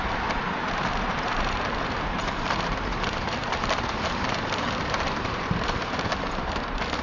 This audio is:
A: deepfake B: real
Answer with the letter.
A